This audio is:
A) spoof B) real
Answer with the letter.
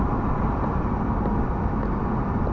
B